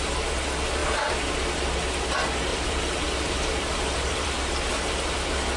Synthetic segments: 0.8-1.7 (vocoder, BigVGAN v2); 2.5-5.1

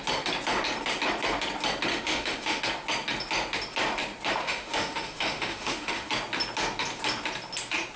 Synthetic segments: 1.9-2.6 (autoencoder, DAC-VAE); 4.4-6.1

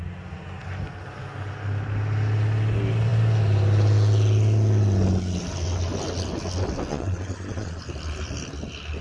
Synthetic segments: 6.9-7.8 (vocoder, Vocos)

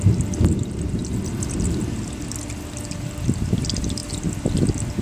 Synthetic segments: none

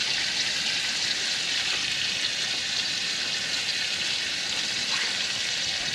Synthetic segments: none

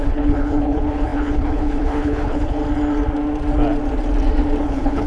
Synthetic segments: 0.0-2.6 (codec, HILCodec); 4.6-5.1

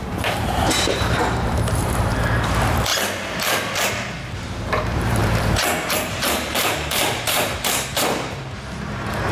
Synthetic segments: 0.0-2.9 (vocoder, BigVGAN v2); 3.9-9.3

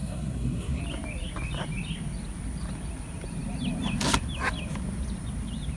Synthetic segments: 0.0-0.8 (codec, SNAC)